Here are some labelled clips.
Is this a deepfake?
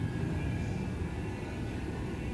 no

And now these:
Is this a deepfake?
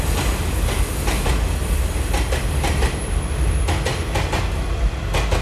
no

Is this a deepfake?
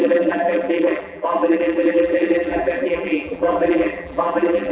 yes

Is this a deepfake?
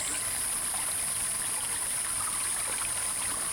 yes